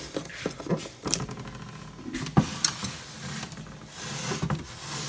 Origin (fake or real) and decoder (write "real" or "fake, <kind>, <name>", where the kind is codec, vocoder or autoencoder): real